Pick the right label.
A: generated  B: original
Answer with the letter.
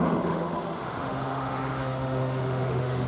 A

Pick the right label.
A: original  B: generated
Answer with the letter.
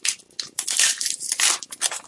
A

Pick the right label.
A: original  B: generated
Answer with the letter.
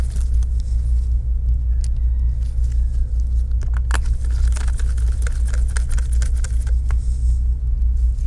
A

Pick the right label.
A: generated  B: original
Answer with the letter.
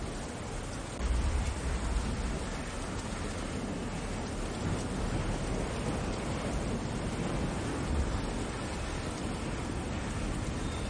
B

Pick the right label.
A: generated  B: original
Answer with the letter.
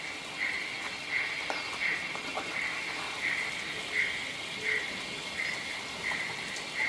B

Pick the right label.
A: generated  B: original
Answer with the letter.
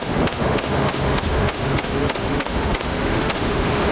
A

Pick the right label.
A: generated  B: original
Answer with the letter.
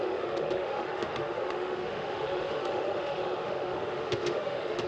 A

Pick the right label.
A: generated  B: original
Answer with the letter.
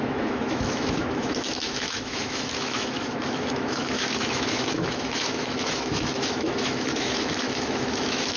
A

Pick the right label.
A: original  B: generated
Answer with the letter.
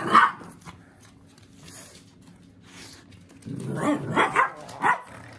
A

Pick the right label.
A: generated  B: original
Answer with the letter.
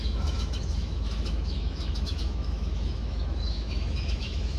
A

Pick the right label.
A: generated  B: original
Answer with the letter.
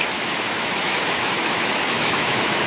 A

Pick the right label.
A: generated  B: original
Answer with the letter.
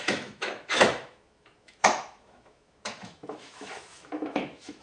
A